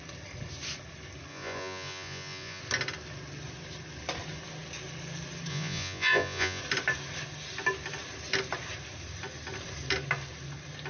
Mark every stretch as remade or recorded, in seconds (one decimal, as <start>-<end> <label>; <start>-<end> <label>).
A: 0.0-1.3 recorded; 1.3-2.6 remade; 2.6-5.5 recorded; 5.5-6.6 remade; 6.6-10.9 recorded